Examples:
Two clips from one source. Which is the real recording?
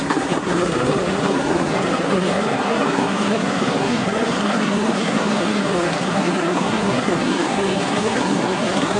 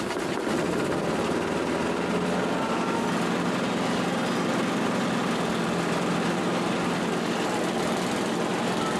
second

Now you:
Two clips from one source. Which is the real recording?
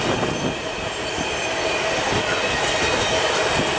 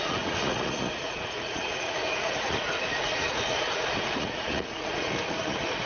first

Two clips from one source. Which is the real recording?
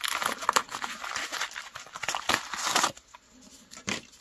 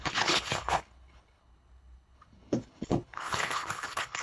first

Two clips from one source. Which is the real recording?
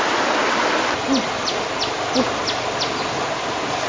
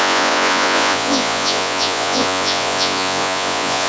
first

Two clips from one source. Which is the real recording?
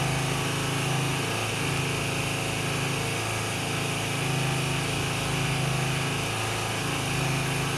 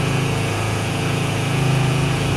first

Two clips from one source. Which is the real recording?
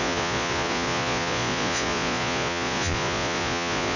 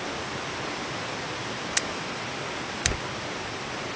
second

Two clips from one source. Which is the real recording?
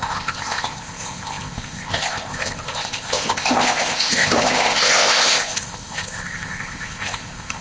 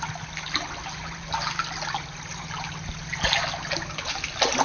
second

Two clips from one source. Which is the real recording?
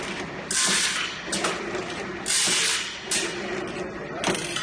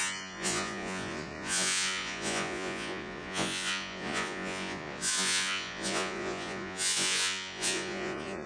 first